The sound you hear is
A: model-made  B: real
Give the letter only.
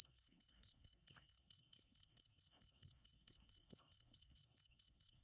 A